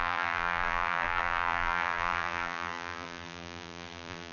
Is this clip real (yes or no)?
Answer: no